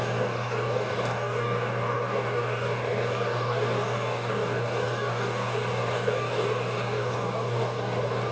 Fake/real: fake